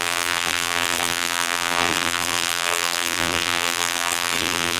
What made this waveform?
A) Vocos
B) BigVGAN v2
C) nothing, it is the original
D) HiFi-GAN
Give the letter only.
B